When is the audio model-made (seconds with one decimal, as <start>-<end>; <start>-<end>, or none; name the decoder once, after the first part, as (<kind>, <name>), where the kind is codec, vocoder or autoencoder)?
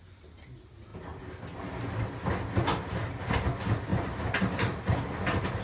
none